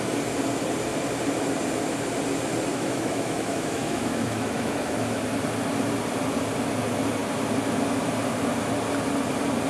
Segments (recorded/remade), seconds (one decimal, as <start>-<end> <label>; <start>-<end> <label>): 0.0-2.7 recorded; 2.7-5.2 remade; 5.2-9.7 recorded